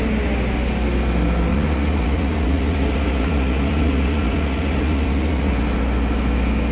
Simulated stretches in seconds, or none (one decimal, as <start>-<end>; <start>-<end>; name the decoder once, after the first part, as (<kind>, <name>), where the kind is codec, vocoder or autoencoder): 1.5-5.5 (vocoder, Vocos)